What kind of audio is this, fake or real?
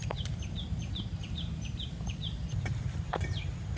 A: fake